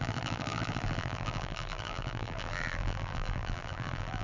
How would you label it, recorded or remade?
remade